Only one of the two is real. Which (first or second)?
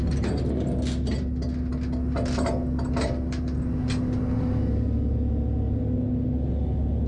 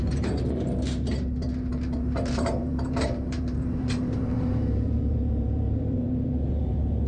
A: first